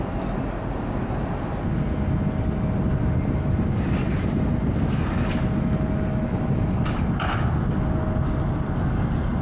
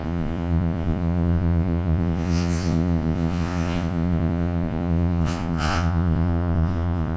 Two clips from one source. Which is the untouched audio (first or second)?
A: first